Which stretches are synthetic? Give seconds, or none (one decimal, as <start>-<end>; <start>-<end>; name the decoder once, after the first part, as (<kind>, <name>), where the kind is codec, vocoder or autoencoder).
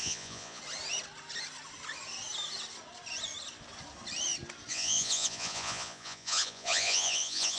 0.0-0.6 (vocoder, Vocos); 4.7-7.6